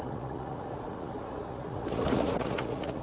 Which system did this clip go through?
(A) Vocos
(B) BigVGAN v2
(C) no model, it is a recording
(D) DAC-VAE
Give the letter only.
A